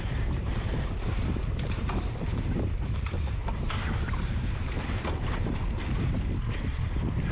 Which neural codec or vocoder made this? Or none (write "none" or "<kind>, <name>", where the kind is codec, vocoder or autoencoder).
vocoder, BigVGAN v2